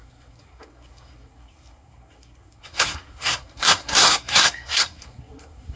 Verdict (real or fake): fake